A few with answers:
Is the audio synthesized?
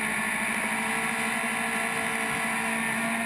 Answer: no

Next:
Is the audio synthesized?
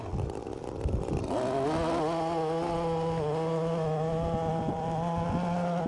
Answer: no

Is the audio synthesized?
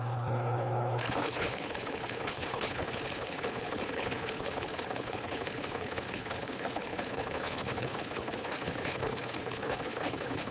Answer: yes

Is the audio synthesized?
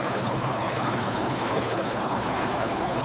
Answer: yes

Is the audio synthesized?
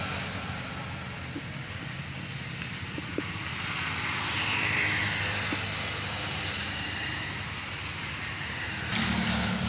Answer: no